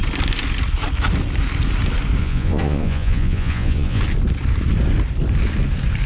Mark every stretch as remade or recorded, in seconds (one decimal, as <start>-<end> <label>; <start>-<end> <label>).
0.0-2.2 recorded; 2.2-4.0 remade; 4.0-6.1 recorded